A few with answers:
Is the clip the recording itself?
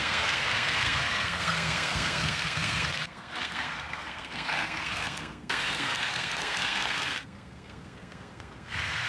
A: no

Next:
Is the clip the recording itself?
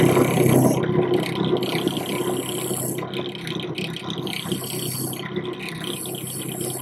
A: yes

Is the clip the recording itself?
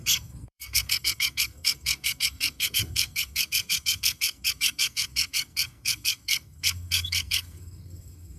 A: no